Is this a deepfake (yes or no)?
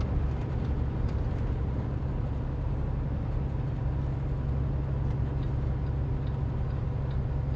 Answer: no